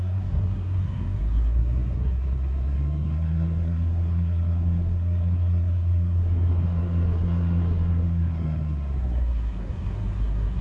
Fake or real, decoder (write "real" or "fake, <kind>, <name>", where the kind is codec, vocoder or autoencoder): fake, codec, SNAC